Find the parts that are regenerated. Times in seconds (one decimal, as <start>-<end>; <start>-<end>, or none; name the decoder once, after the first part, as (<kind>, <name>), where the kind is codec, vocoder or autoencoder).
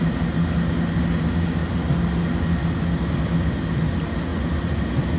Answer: none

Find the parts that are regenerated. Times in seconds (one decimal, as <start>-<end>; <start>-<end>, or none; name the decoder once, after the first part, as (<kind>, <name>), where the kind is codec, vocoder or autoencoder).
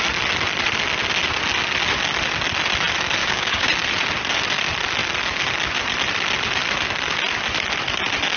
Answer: 3.2-3.7 (codec, DAC)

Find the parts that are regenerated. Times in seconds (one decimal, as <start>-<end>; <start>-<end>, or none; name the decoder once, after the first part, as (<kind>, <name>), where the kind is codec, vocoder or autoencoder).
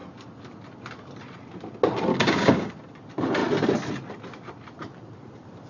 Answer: 2.1-2.7 (codec, DAC)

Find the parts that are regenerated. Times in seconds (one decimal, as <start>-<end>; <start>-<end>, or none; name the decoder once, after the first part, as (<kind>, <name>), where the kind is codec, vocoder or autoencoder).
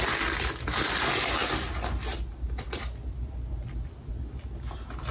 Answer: none